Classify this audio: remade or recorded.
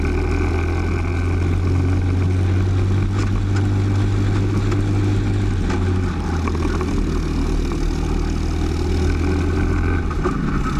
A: recorded